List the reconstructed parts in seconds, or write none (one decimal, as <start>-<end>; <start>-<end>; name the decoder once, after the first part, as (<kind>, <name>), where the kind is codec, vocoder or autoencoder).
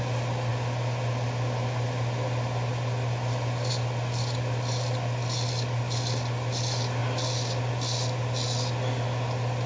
none